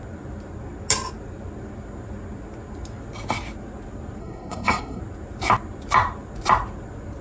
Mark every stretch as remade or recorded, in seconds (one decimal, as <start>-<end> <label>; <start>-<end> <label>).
0.0-4.2 recorded; 4.2-5.0 remade; 5.0-7.2 recorded

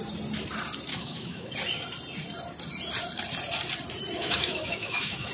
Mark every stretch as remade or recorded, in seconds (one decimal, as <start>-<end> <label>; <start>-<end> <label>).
0.0-0.9 recorded; 0.9-1.5 remade; 1.5-4.2 recorded; 4.2-5.3 remade